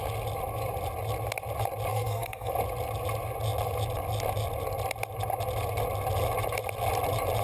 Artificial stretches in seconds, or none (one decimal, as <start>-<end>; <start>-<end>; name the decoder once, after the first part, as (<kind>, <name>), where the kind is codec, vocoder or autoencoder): 1.9-2.5 (codec, SNAC)